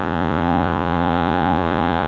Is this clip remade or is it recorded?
remade